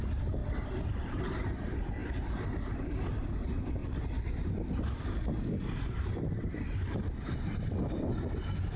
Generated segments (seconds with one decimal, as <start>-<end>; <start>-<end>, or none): 0.4-1.2; 3.8-6.5